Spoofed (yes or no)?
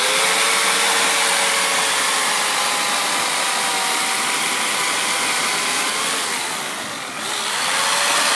no